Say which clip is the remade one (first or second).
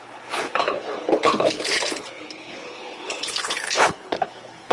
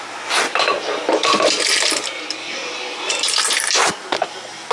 first